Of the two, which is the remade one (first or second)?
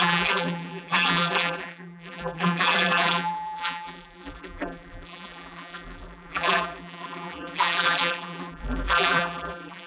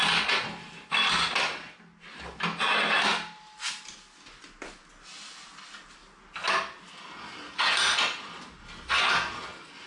first